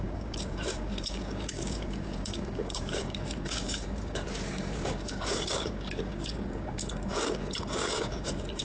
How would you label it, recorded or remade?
remade